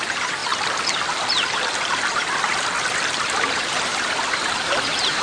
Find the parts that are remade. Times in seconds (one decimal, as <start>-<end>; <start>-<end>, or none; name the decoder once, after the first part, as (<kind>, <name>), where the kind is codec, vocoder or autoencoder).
0.0-0.4 (vocoder, BigVGAN v2); 3.5-3.9; 4.6-5.2